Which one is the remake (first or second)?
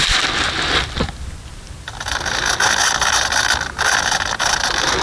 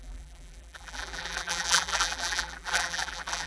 second